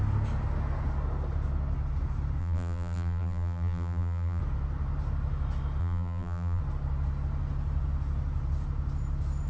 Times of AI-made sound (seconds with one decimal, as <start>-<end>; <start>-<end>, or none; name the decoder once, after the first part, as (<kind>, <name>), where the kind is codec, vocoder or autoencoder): 2.4-4.4 (vocoder, BigVGAN v2); 5.8-6.6